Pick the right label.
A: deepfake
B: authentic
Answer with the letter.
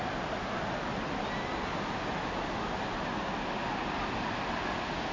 B